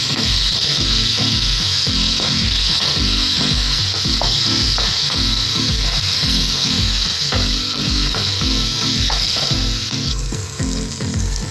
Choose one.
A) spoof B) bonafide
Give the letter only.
A